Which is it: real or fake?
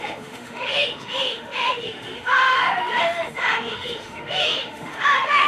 fake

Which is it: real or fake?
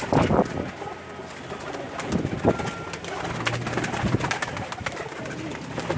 real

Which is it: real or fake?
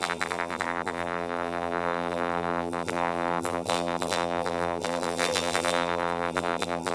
fake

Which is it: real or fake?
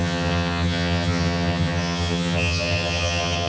fake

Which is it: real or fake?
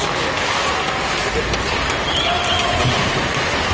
real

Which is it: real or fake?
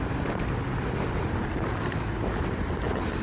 real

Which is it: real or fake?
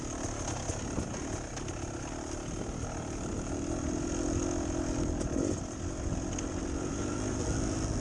real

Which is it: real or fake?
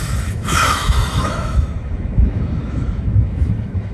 fake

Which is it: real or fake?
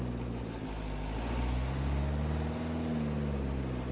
real